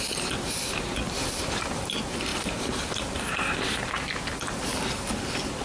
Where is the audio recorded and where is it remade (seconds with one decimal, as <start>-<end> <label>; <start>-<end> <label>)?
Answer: 0.0-1.2 recorded; 1.2-1.9 remade; 1.9-2.3 recorded; 2.3-3.1 remade; 3.1-5.6 recorded